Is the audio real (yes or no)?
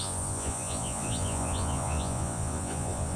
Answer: no